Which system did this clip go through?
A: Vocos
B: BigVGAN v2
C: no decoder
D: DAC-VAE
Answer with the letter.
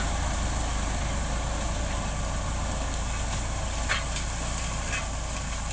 B